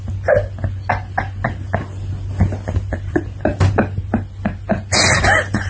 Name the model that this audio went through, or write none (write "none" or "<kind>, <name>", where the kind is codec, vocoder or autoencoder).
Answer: none